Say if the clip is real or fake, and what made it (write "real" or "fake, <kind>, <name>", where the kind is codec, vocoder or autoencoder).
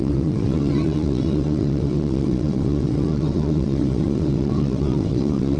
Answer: fake, vocoder, WaveNeXt